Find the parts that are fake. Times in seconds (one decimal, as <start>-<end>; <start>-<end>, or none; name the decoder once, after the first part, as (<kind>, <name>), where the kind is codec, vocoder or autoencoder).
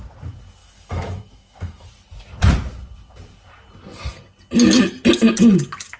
0.6-1.9 (autoencoder, DAC-VAE)